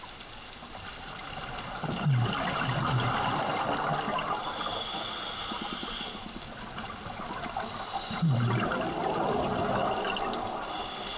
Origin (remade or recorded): recorded